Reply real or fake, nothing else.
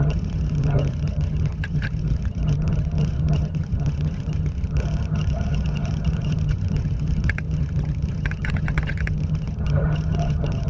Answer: fake